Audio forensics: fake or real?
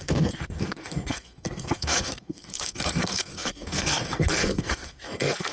fake